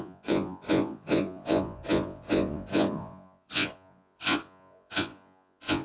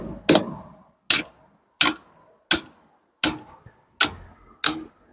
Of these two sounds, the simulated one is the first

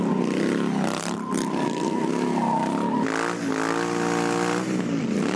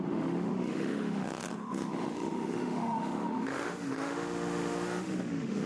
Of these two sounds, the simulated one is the second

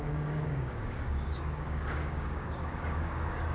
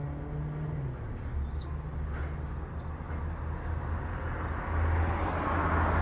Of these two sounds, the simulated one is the first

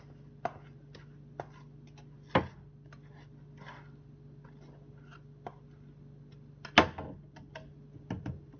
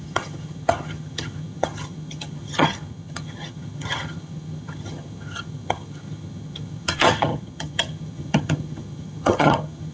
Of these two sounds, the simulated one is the second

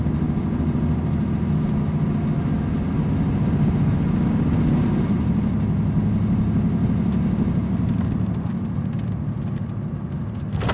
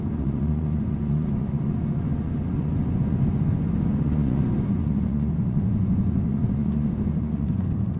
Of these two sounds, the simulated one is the second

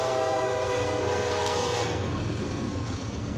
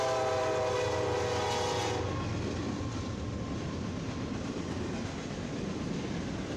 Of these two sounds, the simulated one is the first